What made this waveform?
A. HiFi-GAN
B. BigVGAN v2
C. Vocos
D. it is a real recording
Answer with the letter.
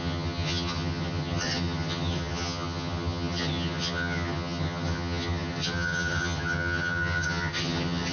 A